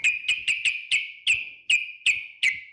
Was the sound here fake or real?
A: real